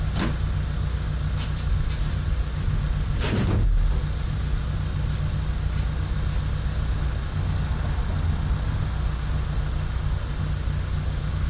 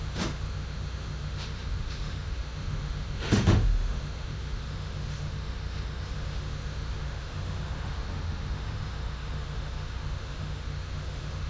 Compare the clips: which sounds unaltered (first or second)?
first